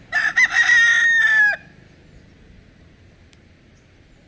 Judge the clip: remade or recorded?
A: recorded